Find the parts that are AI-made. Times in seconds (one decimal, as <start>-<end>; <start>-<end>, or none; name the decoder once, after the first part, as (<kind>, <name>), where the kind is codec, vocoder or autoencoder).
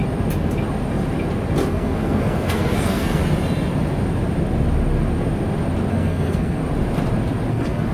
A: 1.7-3.2 (codec, SNAC); 5.9-6.6; 7.5-7.9